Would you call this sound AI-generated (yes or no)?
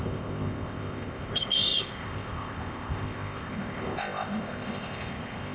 yes